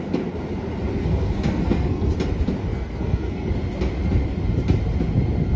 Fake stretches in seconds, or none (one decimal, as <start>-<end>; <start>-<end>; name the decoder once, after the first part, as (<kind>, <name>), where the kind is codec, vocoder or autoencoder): 1.0-2.1 (codec, SNAC); 2.7-3.5

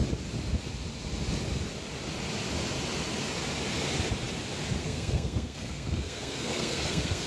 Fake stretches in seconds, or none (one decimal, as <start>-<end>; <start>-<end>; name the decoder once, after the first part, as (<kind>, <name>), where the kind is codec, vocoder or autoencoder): 4.8-7.3 (codec, SNAC)

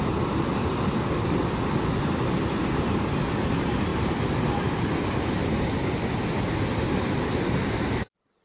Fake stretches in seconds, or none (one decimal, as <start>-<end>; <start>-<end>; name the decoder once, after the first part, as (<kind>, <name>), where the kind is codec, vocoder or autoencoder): none

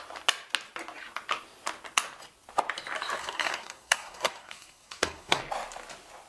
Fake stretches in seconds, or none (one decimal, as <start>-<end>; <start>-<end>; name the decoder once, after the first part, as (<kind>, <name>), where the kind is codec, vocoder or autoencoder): 3.2-5.4 (codec, SNAC)